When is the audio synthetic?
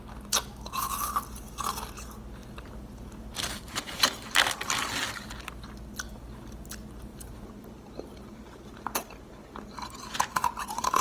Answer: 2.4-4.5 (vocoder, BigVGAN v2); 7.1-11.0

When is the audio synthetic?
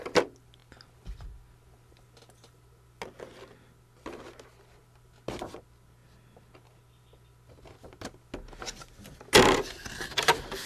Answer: none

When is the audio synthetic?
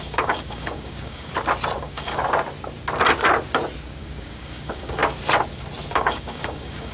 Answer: 0.0-1.3 (codec, DAC); 1.8-2.2; 4.0-5.0; 5.9-6.9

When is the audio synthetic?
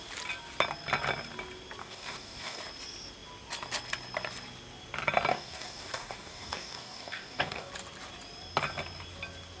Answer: 1.8-2.6 (codec, DAC); 5.3-7.7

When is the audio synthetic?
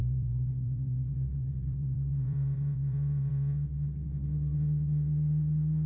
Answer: 0.0-3.3 (vocoder, BigVGAN v2)